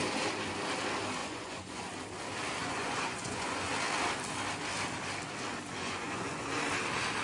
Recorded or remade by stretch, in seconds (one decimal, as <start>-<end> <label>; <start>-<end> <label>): 0.0-1.2 recorded; 1.2-1.9 remade; 1.9-2.6 recorded; 2.6-3.7 remade; 3.7-5.8 recorded; 5.8-6.6 remade; 6.6-7.2 recorded